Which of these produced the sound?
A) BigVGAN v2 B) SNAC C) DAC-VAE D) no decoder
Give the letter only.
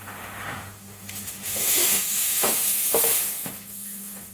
C